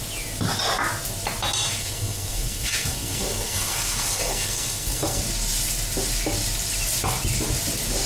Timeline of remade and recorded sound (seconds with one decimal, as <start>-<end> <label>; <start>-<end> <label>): 0.0-1.8 recorded; 1.8-5.2 remade; 5.2-8.1 recorded

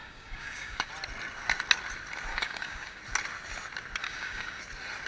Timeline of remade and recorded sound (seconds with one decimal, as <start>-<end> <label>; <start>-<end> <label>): 0.0-0.9 remade; 0.9-2.3 recorded; 2.3-3.0 remade; 3.0-4.0 recorded; 4.0-4.6 remade; 4.6-5.1 recorded